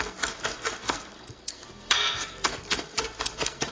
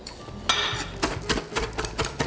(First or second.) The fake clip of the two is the first